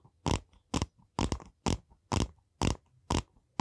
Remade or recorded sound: recorded